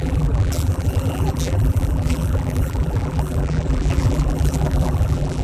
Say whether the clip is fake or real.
fake